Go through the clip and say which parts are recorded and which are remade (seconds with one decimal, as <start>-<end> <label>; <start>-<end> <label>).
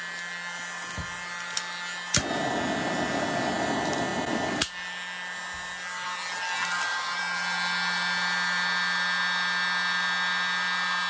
0.0-11.1 recorded